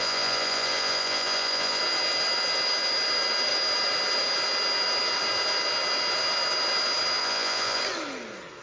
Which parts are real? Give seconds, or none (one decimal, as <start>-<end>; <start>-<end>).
1.8-7.2; 7.8-8.6

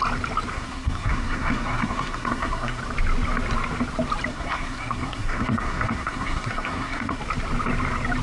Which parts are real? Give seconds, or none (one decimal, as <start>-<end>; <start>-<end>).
0.0-0.5; 2.8-4.3; 7.2-8.2

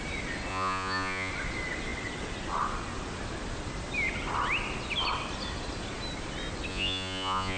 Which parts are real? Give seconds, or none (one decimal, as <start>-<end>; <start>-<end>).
0.0-0.5; 1.3-6.7

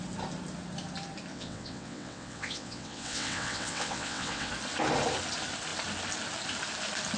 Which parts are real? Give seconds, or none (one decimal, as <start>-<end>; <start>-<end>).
0.0-1.3; 4.5-7.2

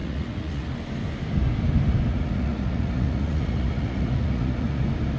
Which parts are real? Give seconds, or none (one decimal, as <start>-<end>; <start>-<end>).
0.7-2.1; 4.8-5.2

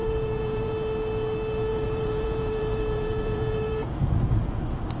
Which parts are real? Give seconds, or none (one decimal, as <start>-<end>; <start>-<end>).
0.7-1.7; 4.6-5.0